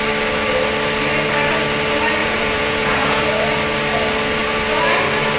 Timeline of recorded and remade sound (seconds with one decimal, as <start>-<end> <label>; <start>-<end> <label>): 0.0-2.2 recorded; 2.2-3.2 remade; 3.2-5.4 recorded